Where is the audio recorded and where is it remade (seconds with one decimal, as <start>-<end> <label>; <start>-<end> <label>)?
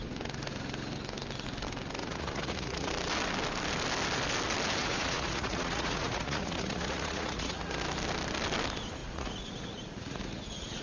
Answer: 0.0-2.0 recorded; 2.0-2.9 remade; 2.9-4.8 recorded; 4.8-7.7 remade; 7.7-9.0 recorded; 9.0-10.8 remade